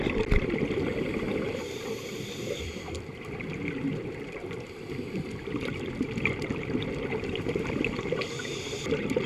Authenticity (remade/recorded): remade